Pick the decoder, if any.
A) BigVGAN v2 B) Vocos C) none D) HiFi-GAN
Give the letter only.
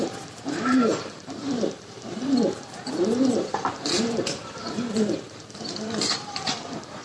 A